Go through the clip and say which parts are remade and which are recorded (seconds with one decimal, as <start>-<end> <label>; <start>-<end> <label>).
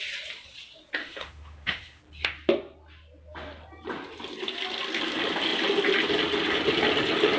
0.0-1.0 recorded; 1.0-2.0 remade; 2.0-7.4 recorded